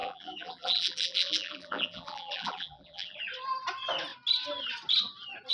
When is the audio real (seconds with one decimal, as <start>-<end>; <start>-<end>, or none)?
3.2-5.5